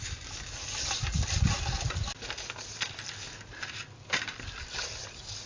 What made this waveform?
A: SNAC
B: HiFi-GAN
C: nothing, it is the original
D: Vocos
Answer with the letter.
C